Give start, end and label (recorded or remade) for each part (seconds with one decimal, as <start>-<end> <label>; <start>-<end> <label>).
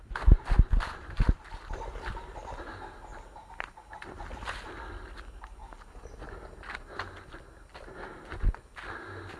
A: 0.0-9.4 recorded